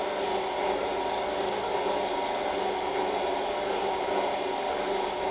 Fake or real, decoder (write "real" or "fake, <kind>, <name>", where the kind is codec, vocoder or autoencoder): real